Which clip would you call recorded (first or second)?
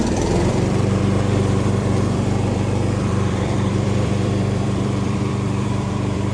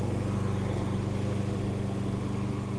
second